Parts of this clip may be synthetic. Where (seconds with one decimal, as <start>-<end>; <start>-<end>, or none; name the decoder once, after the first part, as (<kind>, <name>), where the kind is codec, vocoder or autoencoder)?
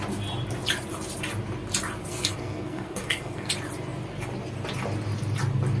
2.0-3.5 (codec, SNAC)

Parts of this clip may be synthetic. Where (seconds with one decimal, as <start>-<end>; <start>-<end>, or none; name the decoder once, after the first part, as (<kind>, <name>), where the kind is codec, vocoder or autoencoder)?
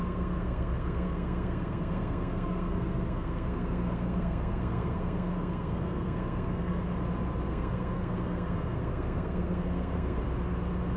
0.0-6.9 (codec, SNAC); 7.5-10.2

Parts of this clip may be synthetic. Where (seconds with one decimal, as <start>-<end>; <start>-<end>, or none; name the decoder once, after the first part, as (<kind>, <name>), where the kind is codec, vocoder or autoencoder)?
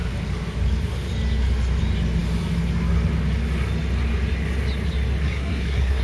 5.2-6.0 (codec, SNAC)